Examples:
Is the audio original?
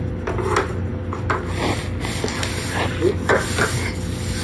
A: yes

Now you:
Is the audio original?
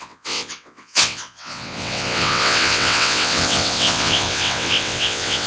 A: no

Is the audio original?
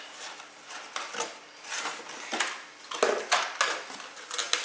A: yes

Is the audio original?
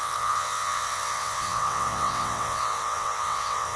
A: no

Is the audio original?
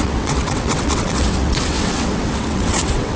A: no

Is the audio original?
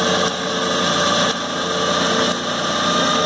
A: yes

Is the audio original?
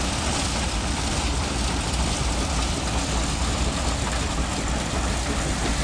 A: yes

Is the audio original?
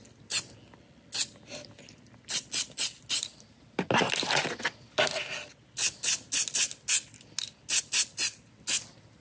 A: yes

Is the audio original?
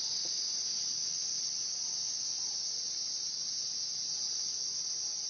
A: yes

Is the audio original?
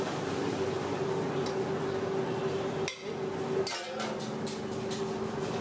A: yes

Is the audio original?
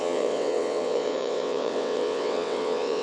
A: no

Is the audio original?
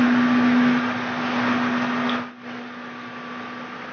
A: yes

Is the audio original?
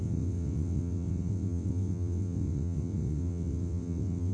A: no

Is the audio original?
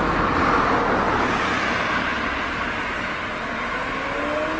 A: yes